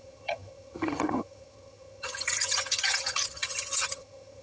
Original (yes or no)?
no